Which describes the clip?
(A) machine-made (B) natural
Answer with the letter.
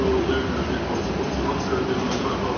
B